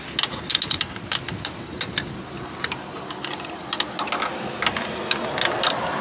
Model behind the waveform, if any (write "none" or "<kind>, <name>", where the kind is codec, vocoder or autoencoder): none